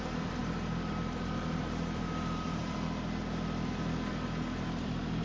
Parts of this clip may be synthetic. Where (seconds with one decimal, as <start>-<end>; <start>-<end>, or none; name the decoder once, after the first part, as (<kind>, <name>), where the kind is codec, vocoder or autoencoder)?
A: 0.0-2.6 (vocoder, BigVGAN v2); 4.1-5.2